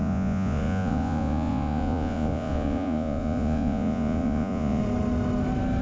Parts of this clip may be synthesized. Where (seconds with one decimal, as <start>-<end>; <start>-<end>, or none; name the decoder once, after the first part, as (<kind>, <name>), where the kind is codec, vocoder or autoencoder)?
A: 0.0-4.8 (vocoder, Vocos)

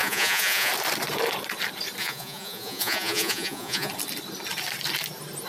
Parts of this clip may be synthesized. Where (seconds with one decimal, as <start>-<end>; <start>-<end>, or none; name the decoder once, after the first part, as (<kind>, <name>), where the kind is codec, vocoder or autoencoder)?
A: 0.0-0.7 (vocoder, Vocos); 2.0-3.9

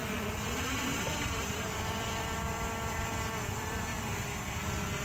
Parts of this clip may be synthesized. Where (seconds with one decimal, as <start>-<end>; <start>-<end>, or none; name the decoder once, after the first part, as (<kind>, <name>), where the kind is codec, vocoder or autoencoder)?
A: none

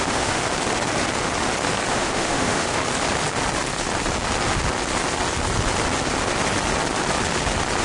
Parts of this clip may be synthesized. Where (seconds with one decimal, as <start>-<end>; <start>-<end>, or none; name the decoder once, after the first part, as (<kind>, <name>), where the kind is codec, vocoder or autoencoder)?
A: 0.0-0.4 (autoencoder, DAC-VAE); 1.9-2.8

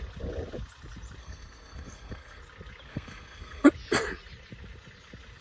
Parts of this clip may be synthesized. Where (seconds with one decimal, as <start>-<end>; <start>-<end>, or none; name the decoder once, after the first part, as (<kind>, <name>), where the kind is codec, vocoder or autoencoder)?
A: 1.2-2.4 (codec, SNAC); 2.9-3.7

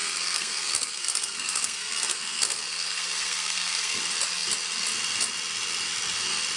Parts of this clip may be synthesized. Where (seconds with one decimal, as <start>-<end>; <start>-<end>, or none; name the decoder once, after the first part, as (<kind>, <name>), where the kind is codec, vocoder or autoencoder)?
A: 0.0-4.0 (codec, SNAC)

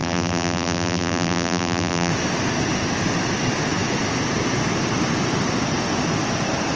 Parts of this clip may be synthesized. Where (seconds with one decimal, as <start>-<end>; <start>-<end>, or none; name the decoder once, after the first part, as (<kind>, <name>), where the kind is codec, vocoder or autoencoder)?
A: 0.0-2.1 (vocoder, BigVGAN v2)

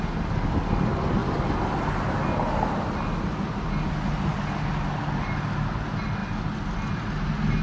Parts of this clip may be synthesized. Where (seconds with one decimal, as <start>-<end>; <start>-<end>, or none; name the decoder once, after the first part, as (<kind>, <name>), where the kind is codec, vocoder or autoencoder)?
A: none